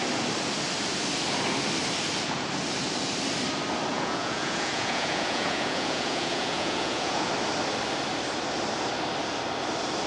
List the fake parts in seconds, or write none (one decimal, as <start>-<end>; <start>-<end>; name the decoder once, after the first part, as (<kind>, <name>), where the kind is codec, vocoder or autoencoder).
3.9-7.3 (vocoder, Vocos)